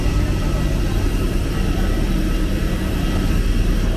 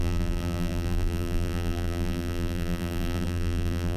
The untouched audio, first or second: first